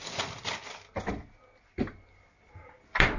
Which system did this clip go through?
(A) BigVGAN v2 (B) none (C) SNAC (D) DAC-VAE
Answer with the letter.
B